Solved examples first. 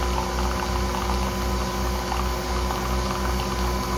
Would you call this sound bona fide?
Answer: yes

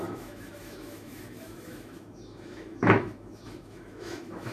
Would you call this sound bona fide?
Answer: no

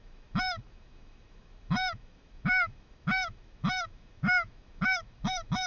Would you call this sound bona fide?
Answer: no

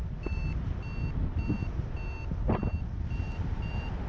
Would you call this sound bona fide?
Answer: yes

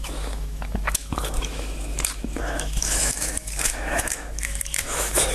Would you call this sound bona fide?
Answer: no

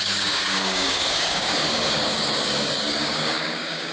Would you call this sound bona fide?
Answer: no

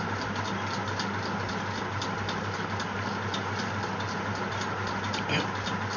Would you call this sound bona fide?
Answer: yes